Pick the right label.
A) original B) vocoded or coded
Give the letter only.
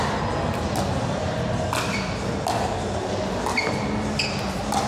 A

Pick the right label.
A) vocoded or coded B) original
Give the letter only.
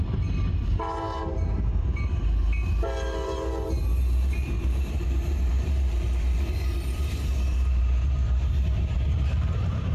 A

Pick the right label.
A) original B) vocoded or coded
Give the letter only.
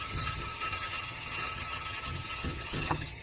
B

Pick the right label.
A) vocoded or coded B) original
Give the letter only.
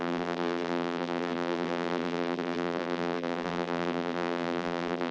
A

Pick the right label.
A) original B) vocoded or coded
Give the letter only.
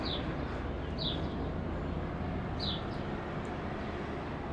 A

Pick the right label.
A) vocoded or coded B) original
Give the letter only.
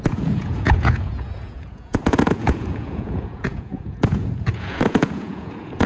A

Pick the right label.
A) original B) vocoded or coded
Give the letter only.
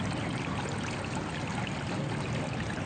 A